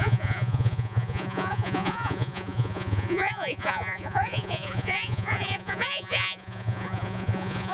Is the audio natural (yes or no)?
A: no